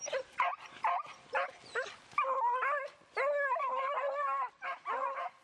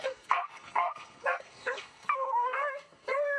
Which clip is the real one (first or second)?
first